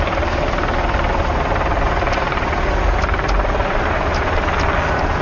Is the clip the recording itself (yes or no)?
yes